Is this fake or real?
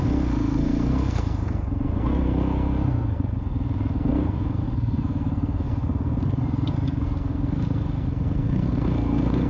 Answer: fake